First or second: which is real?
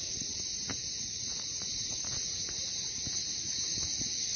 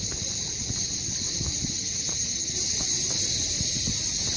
second